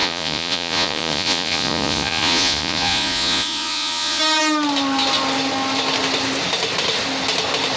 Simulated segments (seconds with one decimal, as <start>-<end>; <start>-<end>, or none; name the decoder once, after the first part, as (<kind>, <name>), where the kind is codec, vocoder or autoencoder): 0.0-4.2 (vocoder, Vocos)